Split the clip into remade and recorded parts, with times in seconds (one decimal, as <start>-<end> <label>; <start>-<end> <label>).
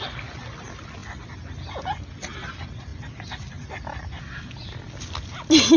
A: 0.0-5.8 recorded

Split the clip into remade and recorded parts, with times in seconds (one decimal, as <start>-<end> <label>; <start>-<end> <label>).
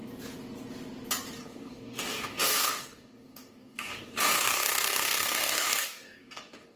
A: 0.0-1.4 recorded; 1.4-6.8 remade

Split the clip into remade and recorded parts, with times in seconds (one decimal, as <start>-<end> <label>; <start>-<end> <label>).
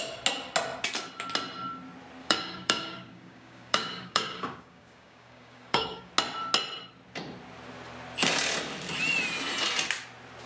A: 0.0-2.2 recorded; 2.2-6.1 remade; 6.1-10.5 recorded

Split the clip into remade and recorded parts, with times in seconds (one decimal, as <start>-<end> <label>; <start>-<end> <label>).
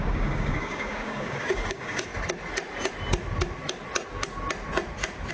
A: 0.0-2.1 remade; 2.1-5.3 recorded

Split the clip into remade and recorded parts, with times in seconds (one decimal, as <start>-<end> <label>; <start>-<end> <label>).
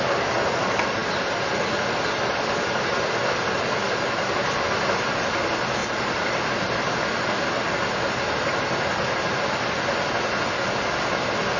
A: 0.0-11.6 recorded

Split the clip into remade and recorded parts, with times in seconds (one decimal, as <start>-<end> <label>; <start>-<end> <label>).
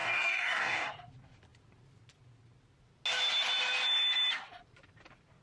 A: 0.0-0.9 remade; 0.9-5.4 recorded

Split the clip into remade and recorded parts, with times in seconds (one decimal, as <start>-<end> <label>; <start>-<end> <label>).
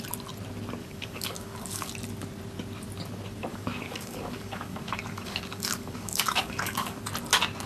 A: 0.0-0.8 recorded; 0.8-1.9 remade; 1.9-3.5 recorded; 3.5-7.0 remade; 7.0-7.7 recorded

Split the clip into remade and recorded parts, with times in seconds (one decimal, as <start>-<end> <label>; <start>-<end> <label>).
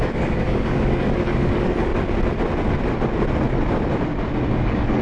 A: 0.0-1.9 remade; 1.9-4.5 recorded; 4.5-5.0 remade